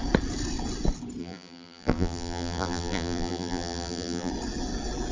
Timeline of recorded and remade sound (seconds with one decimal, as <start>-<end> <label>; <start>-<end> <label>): 0.0-1.2 recorded; 1.2-4.3 remade; 4.3-5.1 recorded